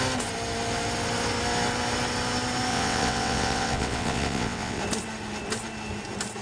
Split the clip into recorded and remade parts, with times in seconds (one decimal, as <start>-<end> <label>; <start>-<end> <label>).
0.0-2.7 recorded; 2.7-4.8 remade; 4.8-6.4 recorded

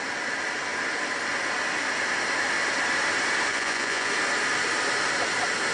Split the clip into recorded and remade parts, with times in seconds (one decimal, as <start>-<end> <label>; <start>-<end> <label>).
0.0-3.5 recorded; 3.5-4.1 remade; 4.1-5.7 recorded

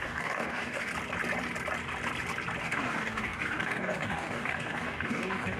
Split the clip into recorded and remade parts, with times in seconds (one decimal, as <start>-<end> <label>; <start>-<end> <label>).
0.0-0.9 remade; 0.9-2.6 recorded; 2.6-5.6 remade

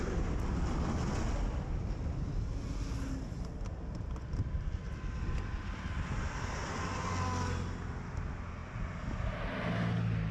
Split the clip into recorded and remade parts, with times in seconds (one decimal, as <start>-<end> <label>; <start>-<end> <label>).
0.0-10.3 recorded